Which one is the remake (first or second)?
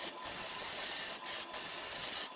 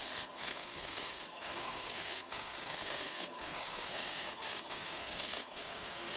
second